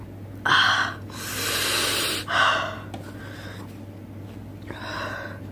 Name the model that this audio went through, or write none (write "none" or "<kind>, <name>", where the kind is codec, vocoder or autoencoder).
none